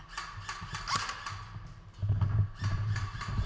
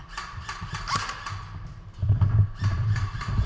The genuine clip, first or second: first